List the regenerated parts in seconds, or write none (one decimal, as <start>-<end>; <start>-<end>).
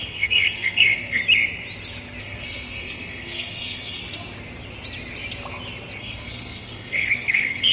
0.0-1.2; 2.2-4.0; 6.0-7.7